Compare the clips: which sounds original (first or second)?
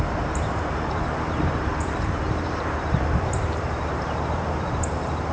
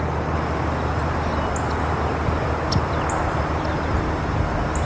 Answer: second